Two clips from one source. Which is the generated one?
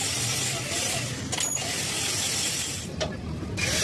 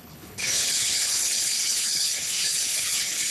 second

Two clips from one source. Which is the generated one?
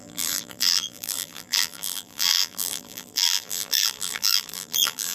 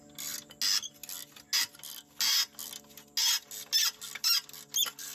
first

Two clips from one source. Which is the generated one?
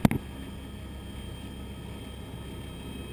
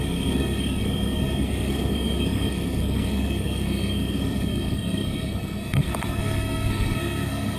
second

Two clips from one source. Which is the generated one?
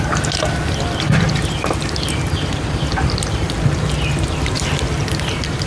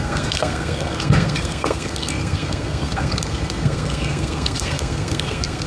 second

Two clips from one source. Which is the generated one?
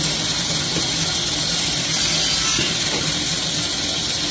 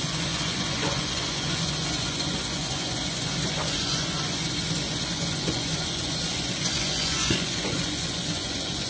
second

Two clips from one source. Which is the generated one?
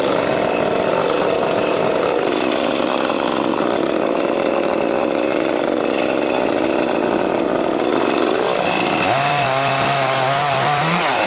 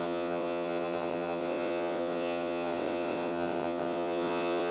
second